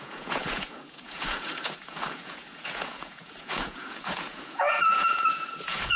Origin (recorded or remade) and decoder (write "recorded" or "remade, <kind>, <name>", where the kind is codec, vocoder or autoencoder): remade, vocoder, Vocos